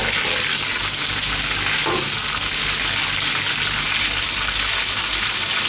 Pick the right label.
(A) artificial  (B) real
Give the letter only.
B